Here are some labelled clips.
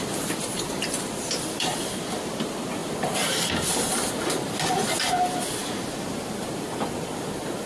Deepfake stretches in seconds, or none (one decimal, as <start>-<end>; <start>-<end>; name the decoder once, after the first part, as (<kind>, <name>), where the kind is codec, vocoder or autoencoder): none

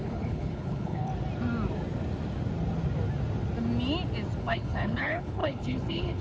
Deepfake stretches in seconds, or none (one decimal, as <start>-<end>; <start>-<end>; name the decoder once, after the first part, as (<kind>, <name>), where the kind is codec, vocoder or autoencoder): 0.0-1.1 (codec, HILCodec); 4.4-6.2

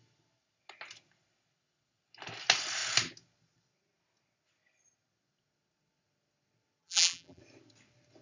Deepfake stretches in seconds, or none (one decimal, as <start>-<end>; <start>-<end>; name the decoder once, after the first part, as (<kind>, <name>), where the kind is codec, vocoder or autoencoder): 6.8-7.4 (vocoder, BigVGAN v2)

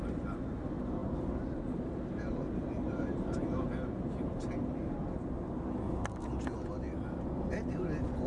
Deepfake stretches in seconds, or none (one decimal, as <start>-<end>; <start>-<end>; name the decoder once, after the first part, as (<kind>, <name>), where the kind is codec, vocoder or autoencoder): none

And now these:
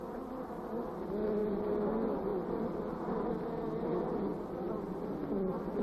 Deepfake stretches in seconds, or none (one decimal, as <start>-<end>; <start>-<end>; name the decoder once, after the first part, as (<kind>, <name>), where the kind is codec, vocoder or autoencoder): none